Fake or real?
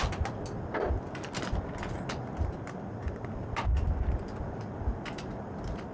real